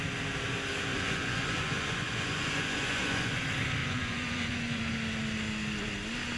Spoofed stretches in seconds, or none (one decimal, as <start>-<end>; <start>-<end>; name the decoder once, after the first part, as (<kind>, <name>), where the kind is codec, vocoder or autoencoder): 0.9-3.4 (vocoder, Vocos); 3.8-4.8